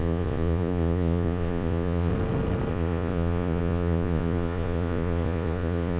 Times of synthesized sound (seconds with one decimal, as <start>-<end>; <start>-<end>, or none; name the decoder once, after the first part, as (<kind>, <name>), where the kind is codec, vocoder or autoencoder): 0.0-2.1 (vocoder, Vocos); 2.7-6.0